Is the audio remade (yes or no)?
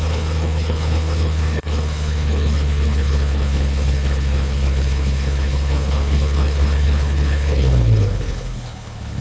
yes